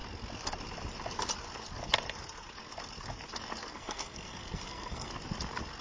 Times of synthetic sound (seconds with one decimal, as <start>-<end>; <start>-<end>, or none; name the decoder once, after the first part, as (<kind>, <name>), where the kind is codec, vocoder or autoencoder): 3.7-5.1 (codec, SNAC)